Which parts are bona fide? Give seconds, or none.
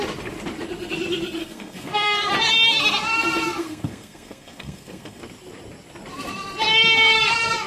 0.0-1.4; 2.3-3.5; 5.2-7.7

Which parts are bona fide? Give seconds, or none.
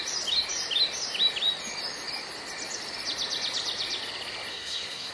0.0-4.5